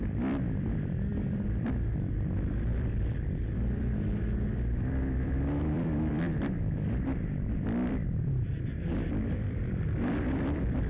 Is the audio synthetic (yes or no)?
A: yes